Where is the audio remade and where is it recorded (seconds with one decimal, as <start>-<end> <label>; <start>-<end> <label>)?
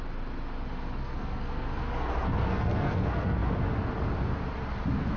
0.0-1.0 recorded; 1.0-3.5 remade; 3.5-5.2 recorded